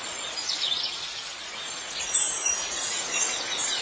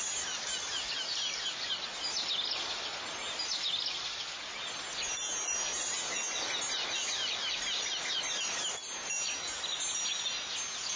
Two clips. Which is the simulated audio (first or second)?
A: first